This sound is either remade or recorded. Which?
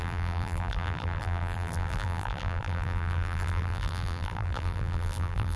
remade